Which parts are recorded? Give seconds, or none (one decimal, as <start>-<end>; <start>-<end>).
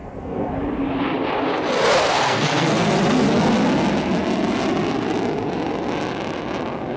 0.5-2.0; 3.3-7.0